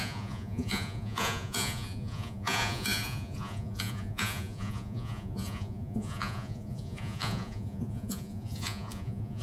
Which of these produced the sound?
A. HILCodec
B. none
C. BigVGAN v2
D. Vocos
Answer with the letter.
D